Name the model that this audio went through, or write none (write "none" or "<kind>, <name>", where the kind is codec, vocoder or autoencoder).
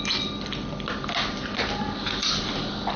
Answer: none